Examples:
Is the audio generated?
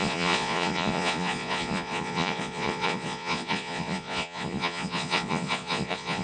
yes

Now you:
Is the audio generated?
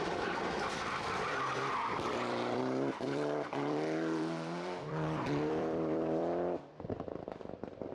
yes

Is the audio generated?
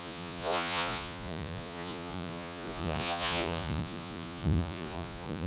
yes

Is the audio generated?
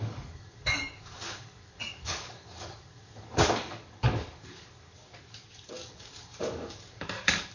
yes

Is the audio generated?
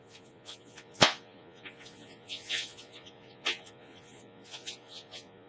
yes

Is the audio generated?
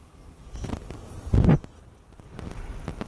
no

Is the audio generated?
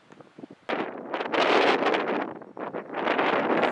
no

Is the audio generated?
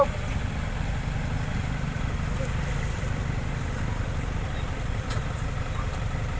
yes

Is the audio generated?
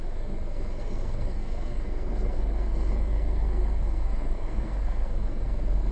yes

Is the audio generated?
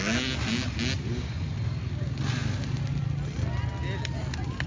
no